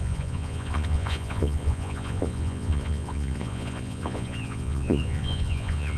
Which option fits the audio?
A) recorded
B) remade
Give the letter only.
B